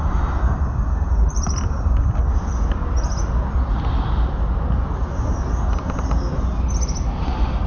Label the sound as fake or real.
real